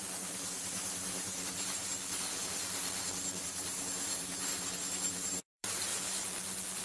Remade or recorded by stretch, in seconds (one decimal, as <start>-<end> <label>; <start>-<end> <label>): 0.0-1.9 remade; 1.9-3.4 recorded; 3.4-5.9 remade; 5.9-6.8 recorded